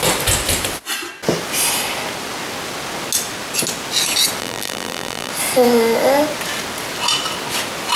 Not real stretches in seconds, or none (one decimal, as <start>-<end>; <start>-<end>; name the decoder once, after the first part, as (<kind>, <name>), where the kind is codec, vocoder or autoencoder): 4.4-5.3 (vocoder, BigVGAN v2)